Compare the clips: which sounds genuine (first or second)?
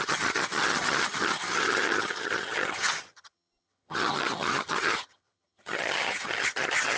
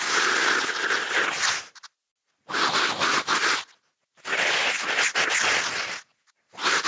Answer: second